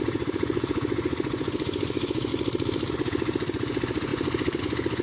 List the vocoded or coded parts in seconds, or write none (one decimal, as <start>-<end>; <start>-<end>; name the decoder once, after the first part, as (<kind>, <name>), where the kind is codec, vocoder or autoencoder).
0.0-2.3 (vocoder, Vocos); 2.9-5.0